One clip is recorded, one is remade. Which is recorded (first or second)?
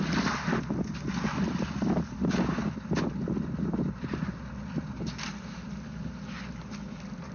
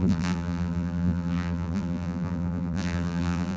first